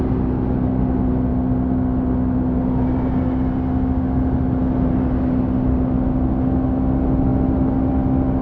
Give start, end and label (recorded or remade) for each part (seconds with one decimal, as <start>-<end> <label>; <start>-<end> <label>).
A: 0.0-8.4 recorded